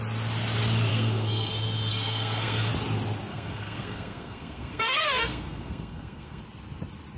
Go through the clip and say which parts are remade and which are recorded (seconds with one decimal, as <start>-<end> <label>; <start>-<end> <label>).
0.0-0.9 recorded; 0.9-1.5 remade; 1.5-1.9 recorded; 1.9-2.7 remade; 2.7-3.3 recorded; 3.3-6.4 remade; 6.4-7.2 recorded